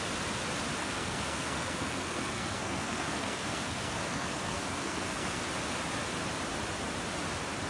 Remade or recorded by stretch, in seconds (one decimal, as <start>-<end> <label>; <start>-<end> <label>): 0.0-0.8 recorded; 0.8-5.4 remade; 5.4-7.7 recorded